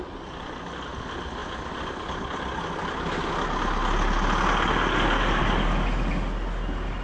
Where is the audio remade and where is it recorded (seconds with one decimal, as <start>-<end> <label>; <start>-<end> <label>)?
0.0-7.0 recorded